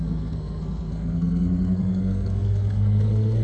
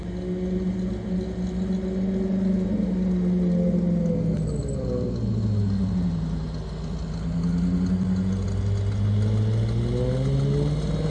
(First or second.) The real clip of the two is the second